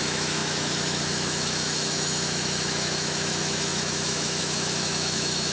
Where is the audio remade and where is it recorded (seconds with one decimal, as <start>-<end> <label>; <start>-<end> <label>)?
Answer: 0.0-5.5 remade